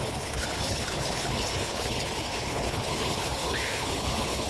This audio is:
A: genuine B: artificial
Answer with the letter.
B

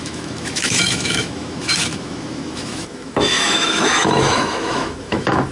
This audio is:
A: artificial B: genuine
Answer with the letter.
A